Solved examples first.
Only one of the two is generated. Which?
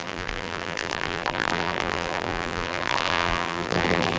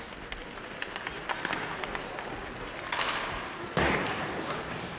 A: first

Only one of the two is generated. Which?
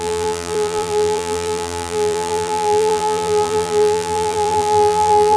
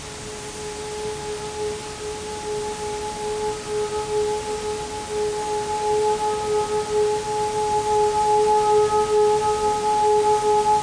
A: first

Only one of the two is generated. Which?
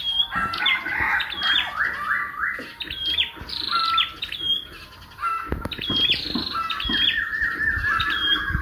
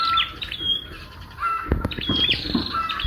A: second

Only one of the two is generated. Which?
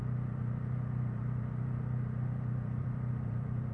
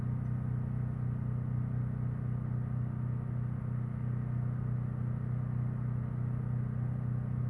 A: first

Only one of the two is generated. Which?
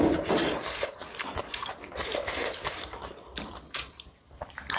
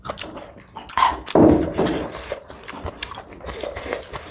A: first